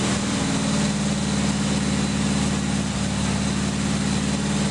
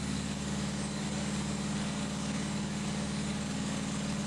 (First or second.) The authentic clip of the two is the first